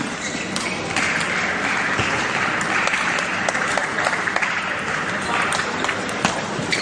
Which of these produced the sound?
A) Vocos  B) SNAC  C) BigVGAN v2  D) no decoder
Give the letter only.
D